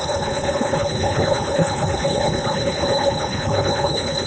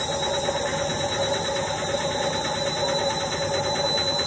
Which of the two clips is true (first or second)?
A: second